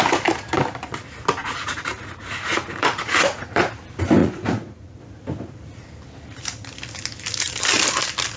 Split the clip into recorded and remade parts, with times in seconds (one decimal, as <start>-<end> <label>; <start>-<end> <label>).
0.0-1.4 recorded; 1.4-3.7 remade; 3.7-4.2 recorded; 4.2-5.0 remade; 5.0-8.4 recorded